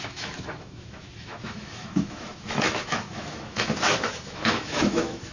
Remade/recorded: remade